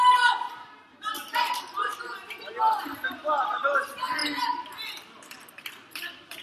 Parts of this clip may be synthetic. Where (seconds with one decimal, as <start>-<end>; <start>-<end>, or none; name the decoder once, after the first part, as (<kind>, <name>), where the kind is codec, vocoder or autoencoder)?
0.0-4.2 (vocoder, BigVGAN v2); 4.7-6.4